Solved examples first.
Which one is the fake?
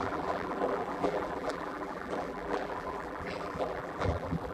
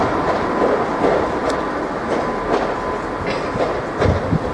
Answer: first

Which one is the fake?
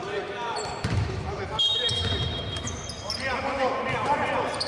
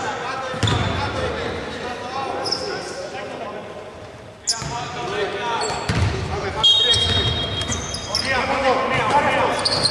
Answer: first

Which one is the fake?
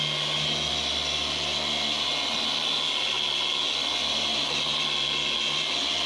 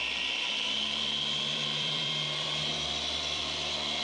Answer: second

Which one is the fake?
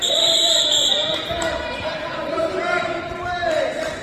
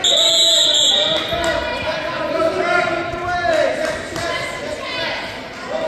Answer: first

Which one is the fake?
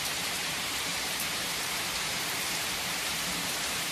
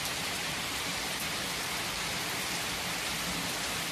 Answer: first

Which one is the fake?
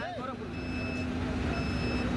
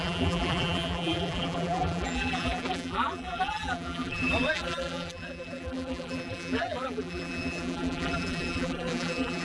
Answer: second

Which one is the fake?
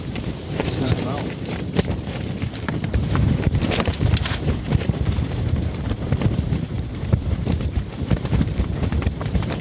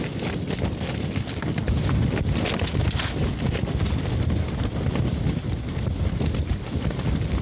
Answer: first